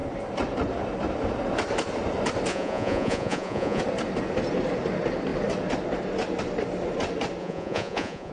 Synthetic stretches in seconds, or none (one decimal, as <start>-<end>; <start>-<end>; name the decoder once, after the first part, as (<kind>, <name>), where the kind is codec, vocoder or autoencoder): 2.5-3.8 (vocoder, Vocos); 7.4-8.3